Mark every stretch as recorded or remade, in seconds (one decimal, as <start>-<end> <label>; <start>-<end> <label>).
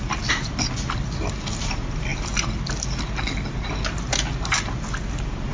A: 0.0-5.5 recorded